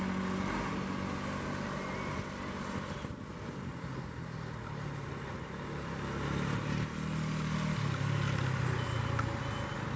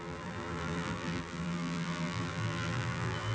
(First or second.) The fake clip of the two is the second